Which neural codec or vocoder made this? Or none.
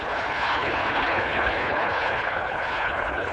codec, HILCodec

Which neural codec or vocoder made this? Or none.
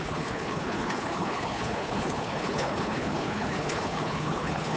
codec, HILCodec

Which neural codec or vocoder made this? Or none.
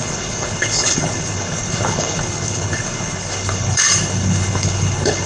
codec, HILCodec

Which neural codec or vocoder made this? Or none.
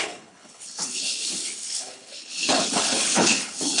codec, HILCodec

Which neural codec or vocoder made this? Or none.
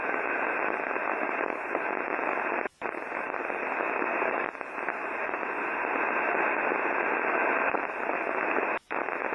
none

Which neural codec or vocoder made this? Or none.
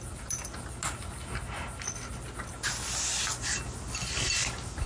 none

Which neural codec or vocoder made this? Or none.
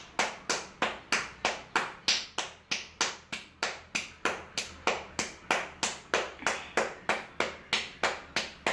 none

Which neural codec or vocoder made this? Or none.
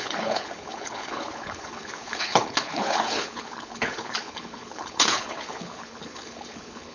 codec, HILCodec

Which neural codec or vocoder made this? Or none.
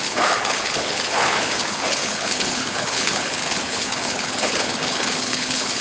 codec, HILCodec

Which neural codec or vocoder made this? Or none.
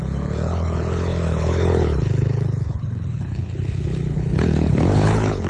codec, HILCodec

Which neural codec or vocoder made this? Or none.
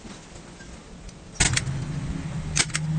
none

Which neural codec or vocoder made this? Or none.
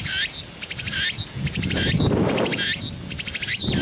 none